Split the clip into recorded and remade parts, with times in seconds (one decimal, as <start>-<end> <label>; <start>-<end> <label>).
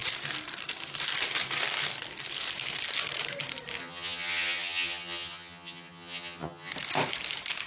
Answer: 0.0-3.8 recorded; 3.8-6.7 remade; 6.7-7.7 recorded